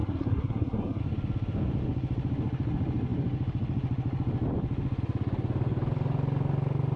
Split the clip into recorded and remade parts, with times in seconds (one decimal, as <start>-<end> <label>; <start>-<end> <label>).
0.0-1.0 remade; 1.0-7.0 recorded